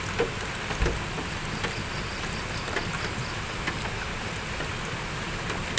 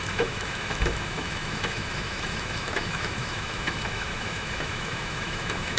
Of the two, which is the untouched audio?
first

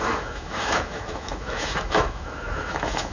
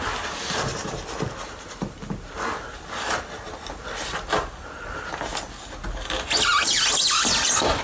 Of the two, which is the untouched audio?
second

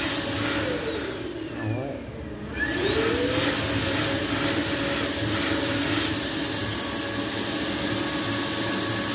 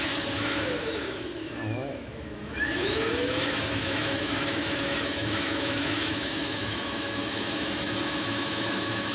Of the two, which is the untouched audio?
first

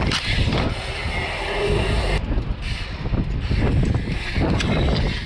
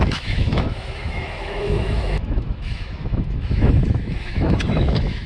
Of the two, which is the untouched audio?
first